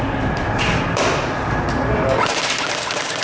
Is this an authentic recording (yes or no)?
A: yes